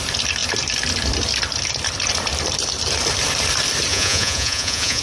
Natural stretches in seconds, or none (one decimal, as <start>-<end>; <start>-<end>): 0.0-3.9